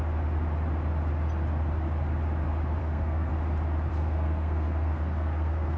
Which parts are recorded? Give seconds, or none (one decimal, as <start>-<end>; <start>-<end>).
0.0-2.8; 3.3-3.9